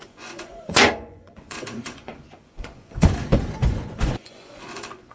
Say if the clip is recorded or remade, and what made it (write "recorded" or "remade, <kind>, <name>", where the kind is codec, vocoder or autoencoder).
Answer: remade, vocoder, Vocos